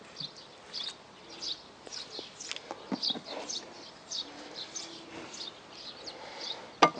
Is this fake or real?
real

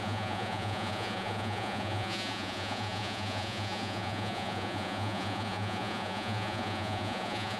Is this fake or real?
fake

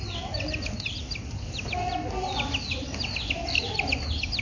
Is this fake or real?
real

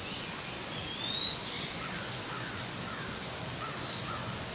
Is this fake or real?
fake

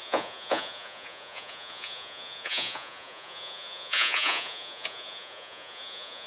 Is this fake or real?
fake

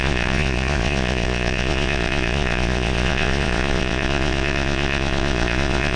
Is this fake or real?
fake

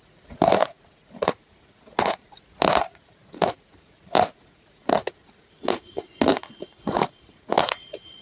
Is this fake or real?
fake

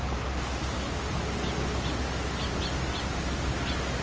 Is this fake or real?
real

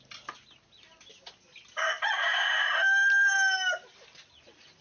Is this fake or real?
real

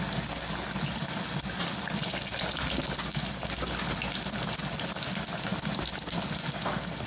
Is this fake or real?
real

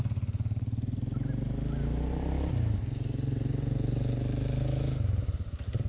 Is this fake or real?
real